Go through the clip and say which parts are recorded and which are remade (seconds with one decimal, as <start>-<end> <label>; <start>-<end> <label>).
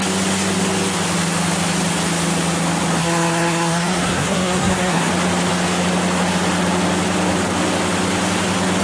0.0-3.0 recorded; 3.0-5.1 remade; 5.1-8.8 recorded